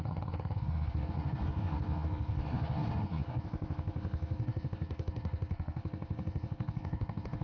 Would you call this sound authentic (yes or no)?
no